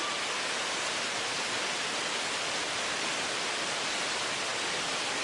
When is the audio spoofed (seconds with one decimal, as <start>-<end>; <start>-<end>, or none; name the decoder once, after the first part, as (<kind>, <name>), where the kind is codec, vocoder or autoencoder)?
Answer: none